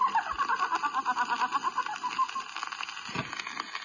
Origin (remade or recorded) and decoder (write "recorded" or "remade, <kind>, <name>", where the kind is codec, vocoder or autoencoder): recorded